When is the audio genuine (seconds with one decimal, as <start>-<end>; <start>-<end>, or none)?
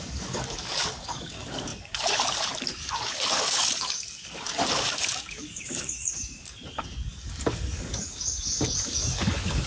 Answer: none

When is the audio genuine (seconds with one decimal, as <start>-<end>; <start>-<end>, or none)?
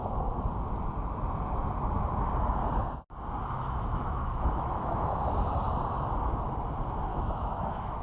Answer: 0.0-3.4; 5.2-7.1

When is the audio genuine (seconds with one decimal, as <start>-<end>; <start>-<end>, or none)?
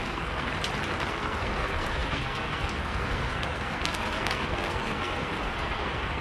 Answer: 0.5-1.1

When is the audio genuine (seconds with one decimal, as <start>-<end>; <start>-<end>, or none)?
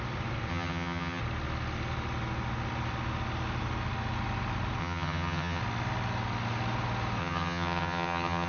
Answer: 0.0-0.5; 1.2-4.8; 5.6-7.2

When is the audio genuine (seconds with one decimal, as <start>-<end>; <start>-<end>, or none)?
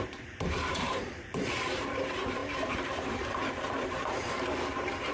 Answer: none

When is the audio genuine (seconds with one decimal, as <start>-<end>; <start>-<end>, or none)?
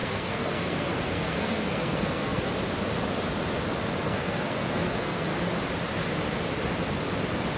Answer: 2.5-4.0; 5.3-7.6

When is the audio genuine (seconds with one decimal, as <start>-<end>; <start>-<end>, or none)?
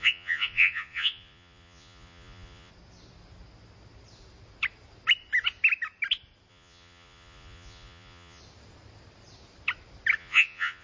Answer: 2.7-6.5; 8.4-10.2